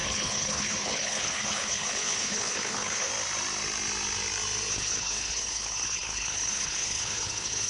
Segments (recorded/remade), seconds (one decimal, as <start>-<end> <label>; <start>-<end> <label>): 0.0-3.1 remade; 3.1-4.7 recorded; 4.7-7.7 remade